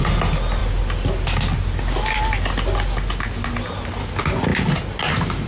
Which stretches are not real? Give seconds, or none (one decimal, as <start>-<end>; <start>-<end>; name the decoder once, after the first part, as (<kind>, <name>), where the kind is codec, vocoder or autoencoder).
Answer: none